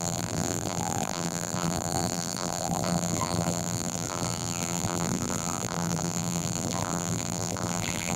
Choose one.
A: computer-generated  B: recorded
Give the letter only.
A